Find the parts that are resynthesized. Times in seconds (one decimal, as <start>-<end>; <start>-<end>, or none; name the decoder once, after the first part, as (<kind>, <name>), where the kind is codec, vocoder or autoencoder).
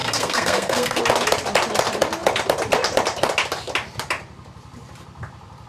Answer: 0.0-1.0 (codec, SNAC)